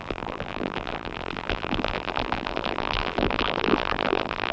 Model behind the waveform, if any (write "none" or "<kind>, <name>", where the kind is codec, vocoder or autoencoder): vocoder, BigVGAN v2